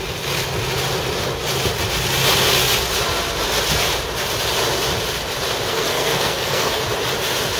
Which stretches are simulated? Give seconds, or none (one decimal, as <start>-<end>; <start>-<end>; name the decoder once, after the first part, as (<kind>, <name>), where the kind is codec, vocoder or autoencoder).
5.7-6.8 (codec, SNAC)